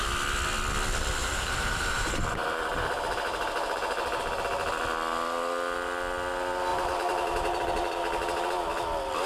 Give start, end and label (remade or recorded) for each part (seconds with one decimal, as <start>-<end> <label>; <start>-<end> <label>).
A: 0.0-1.2 recorded; 1.2-4.2 remade; 4.2-6.7 recorded; 6.7-8.0 remade; 8.0-9.3 recorded

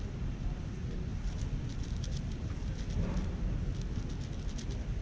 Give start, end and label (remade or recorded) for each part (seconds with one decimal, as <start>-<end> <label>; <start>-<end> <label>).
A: 0.0-5.0 recorded

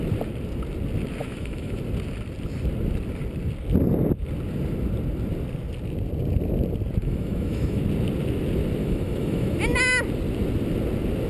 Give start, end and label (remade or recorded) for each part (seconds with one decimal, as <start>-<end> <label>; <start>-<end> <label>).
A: 0.0-1.2 recorded; 1.2-1.8 remade; 1.8-7.0 recorded; 7.0-7.8 remade; 7.8-8.8 recorded; 8.8-9.6 remade; 9.6-11.3 recorded